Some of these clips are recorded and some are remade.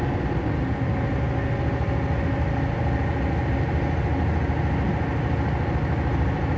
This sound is recorded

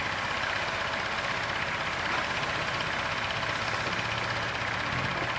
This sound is recorded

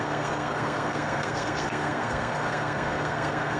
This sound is remade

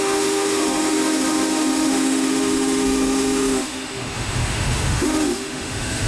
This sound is remade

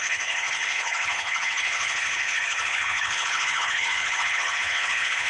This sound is remade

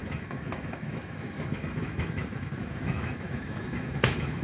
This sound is remade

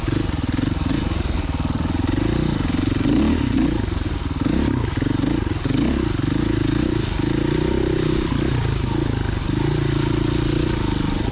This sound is recorded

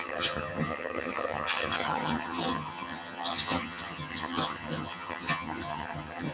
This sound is remade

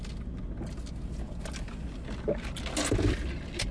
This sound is recorded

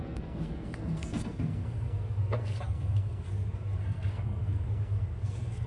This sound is remade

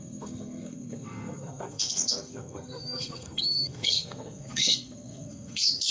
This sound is remade